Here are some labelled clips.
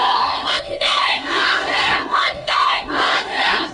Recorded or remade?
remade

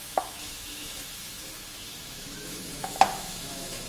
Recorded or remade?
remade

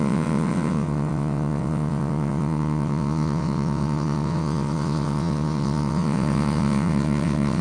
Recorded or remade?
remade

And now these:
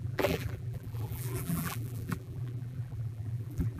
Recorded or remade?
remade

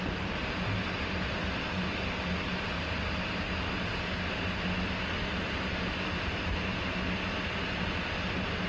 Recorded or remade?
recorded